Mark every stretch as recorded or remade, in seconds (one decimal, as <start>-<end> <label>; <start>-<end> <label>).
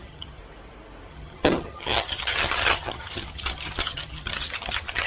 0.0-0.4 remade; 0.4-1.1 recorded; 1.1-5.1 remade